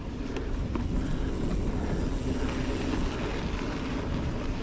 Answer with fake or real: real